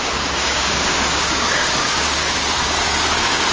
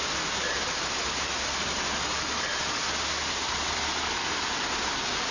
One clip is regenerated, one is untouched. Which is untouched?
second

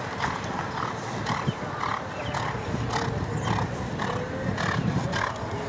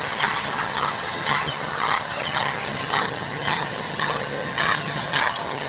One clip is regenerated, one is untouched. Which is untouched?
first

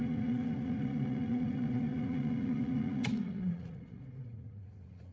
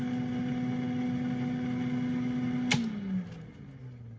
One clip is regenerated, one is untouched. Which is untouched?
second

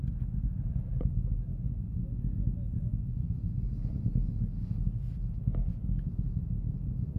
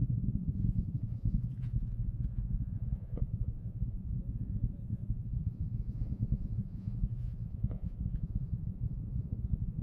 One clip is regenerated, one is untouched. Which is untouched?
first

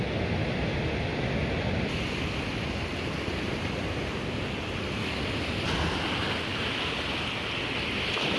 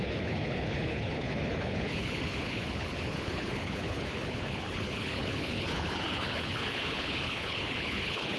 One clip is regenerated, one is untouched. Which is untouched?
first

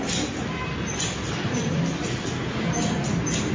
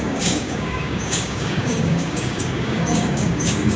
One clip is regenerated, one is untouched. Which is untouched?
first